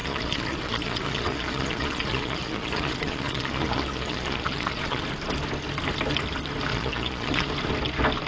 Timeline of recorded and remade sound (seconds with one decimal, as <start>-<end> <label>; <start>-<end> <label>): 0.0-5.0 remade; 5.0-6.7 recorded; 6.7-7.5 remade; 7.5-8.3 recorded